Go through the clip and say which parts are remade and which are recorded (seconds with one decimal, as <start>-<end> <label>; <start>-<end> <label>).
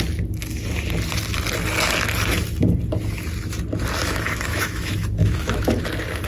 0.0-4.0 recorded; 4.0-5.8 remade; 5.8-6.3 recorded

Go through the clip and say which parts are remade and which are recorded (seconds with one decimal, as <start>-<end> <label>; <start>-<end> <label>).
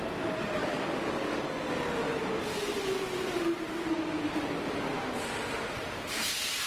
0.0-0.6 recorded; 0.6-1.4 remade; 1.4-6.7 recorded